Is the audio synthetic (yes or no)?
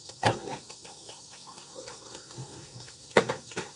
yes